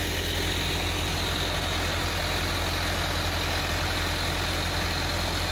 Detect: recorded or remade recorded